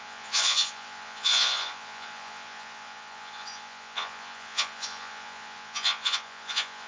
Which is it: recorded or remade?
remade